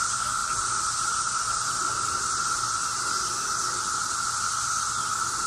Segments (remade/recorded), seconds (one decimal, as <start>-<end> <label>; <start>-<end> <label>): 0.0-0.4 recorded; 0.4-1.1 remade; 1.1-5.5 recorded